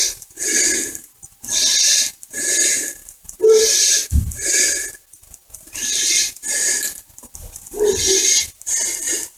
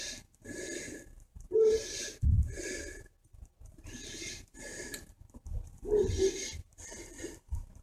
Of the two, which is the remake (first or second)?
second